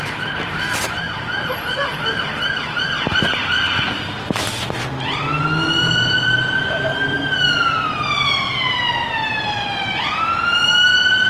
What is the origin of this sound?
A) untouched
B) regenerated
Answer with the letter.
A